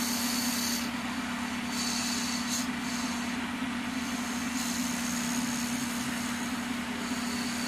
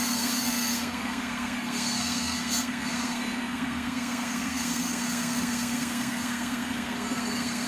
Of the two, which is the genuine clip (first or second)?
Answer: first